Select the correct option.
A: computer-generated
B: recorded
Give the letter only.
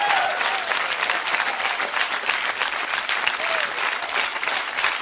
B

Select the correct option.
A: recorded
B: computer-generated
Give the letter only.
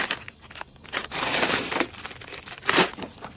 A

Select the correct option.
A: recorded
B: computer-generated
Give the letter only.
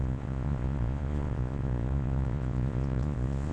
B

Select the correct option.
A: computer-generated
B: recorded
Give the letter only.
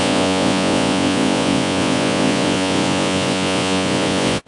A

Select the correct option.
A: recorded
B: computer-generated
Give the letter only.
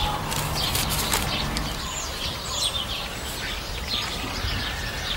A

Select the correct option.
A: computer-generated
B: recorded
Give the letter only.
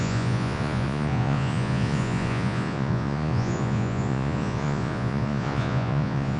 A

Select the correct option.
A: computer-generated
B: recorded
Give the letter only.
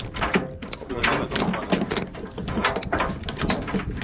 B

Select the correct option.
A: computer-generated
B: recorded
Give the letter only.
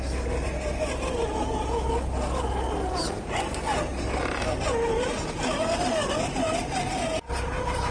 B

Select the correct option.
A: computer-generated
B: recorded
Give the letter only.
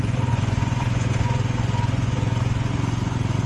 A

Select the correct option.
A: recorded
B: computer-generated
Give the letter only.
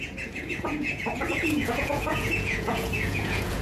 B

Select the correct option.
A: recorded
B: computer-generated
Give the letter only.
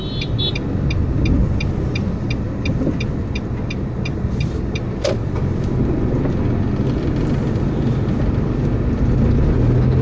A